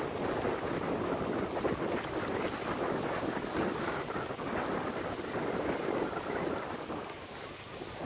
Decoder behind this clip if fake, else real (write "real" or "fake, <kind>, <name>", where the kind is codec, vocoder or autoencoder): real